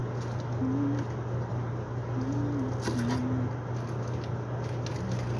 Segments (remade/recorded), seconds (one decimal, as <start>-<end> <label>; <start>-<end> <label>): 0.0-5.4 recorded